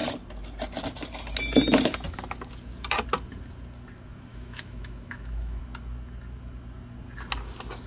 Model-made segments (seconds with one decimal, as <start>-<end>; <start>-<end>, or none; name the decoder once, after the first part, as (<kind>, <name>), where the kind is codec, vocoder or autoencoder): 4.3-5.6 (autoencoder, DAC-VAE)